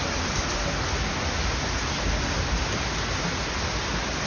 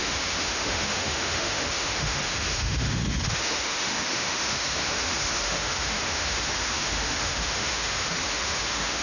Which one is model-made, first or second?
second